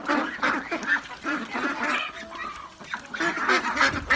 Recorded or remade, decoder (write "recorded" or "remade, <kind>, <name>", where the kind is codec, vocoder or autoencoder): recorded